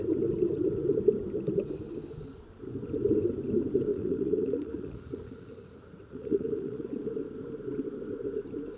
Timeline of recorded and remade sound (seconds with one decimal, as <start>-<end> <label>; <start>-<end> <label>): 0.0-3.9 recorded; 3.9-7.1 remade; 7.1-8.8 recorded